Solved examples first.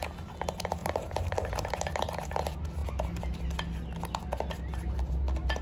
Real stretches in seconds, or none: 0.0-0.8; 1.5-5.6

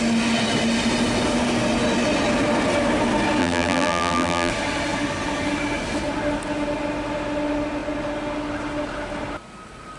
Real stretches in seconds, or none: 0.0-3.4; 4.5-10.0

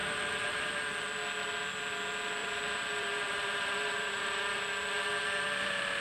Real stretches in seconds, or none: 0.7-2.4; 4.4-6.0